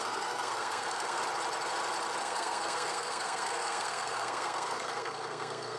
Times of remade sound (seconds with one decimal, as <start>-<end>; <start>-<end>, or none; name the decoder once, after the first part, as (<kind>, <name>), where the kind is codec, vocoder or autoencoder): 0.0-1.2 (codec, SNAC); 2.2-5.8